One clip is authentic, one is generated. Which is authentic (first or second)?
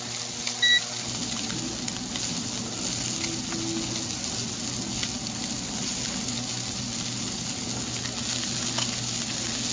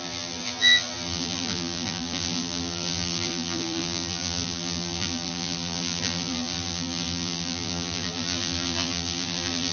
first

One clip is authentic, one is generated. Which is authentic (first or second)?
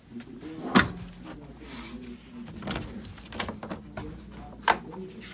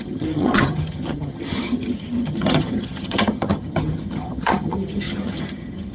first